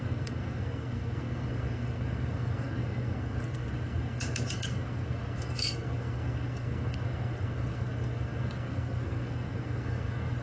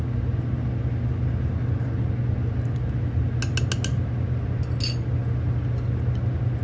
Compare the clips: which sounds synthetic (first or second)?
first